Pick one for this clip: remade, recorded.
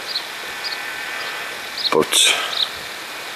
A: recorded